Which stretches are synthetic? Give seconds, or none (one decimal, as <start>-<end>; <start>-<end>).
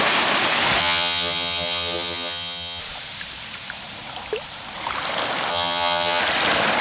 0.8-2.8; 5.5-6.2